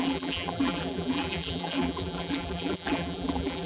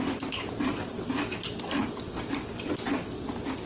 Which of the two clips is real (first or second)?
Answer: second